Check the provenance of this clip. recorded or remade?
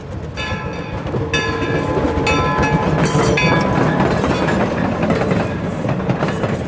recorded